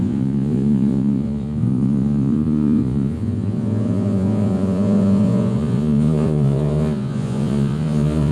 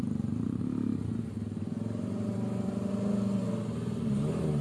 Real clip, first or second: second